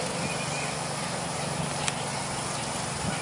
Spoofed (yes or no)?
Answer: no